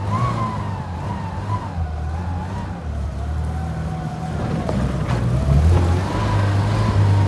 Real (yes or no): yes